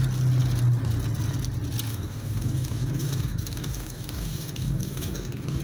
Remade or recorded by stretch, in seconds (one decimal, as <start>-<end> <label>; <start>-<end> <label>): 0.0-1.9 recorded; 1.9-5.6 remade